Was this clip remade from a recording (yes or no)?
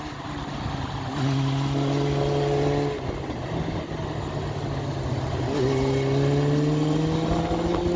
no